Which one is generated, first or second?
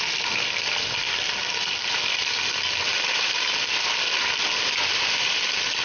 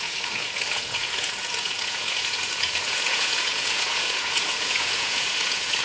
second